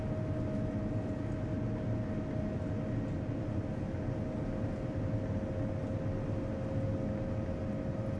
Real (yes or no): yes